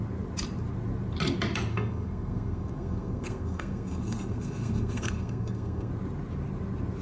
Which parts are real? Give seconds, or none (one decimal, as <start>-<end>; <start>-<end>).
0.0-1.7; 5.9-7.0